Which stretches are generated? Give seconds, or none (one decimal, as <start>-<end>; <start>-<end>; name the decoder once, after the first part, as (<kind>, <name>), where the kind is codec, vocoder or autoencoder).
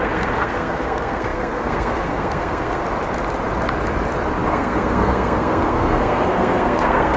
0.0-2.8 (codec, SNAC); 4.5-7.2